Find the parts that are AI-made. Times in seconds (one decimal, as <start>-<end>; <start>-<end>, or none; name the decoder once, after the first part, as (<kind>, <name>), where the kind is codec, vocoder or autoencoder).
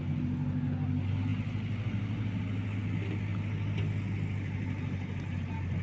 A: none